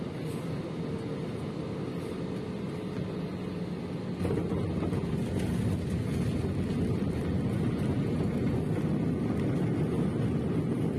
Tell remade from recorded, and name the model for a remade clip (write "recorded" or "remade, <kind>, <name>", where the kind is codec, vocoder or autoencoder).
recorded